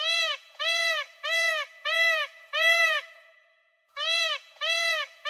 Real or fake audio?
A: fake